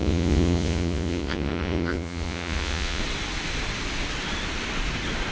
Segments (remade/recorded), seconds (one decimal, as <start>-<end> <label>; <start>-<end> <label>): 0.0-3.0 remade; 3.0-5.3 recorded